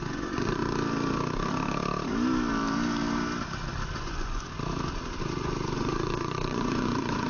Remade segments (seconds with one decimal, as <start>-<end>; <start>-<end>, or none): 0.0-0.6; 4.0-4.5; 5.2-7.3